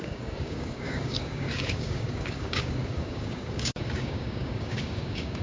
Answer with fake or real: fake